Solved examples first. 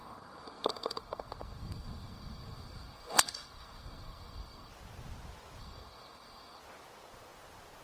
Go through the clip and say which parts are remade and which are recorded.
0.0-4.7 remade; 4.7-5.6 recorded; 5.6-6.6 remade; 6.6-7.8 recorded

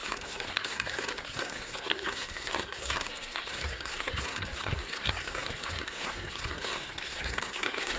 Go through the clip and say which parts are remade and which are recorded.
0.0-8.0 remade

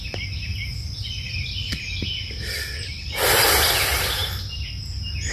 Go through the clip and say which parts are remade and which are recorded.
0.0-5.3 recorded

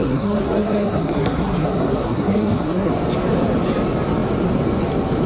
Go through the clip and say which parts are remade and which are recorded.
0.0-2.9 remade; 2.9-5.3 recorded

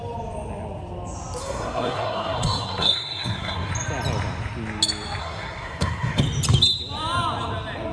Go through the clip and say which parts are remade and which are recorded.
0.0-1.4 recorded; 1.4-3.7 remade; 3.7-5.2 recorded; 5.2-6.2 remade; 6.2-7.9 recorded

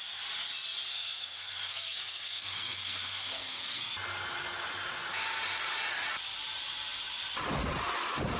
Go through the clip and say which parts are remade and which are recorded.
0.0-0.9 recorded; 0.9-3.8 remade; 3.8-8.4 recorded

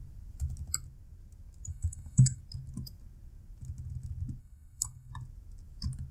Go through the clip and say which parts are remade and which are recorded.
0.0-1.7 recorded; 1.7-2.4 remade; 2.4-4.4 recorded; 4.4-5.1 remade; 5.1-6.1 recorded